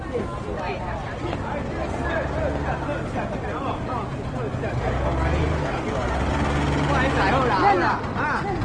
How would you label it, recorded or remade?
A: recorded